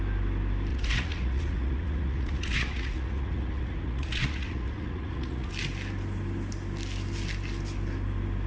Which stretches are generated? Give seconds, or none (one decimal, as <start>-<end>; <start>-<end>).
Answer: 0.7-5.5

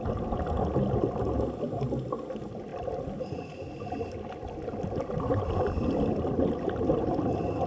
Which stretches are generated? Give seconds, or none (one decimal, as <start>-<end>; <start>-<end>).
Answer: none

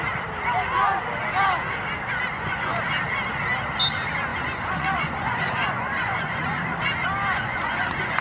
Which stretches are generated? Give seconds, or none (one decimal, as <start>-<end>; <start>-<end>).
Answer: 2.3-2.8; 4.3-6.8; 7.3-8.2

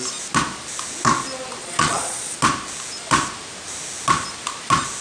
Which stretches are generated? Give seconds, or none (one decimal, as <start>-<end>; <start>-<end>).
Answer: 1.6-2.4

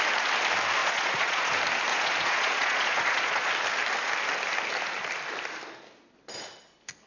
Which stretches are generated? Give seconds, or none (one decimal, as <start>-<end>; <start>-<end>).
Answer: 0.8-1.5; 1.9-3.5

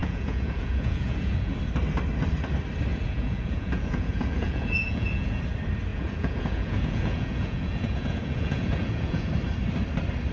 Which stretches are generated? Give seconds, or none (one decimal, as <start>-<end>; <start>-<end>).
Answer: 0.0-1.6; 2.9-5.4; 5.9-9.3